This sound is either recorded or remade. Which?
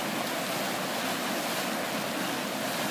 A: recorded